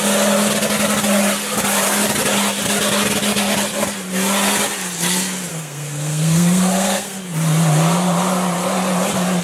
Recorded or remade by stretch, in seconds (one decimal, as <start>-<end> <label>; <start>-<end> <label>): 0.0-5.5 recorded; 5.5-7.2 remade; 7.2-9.4 recorded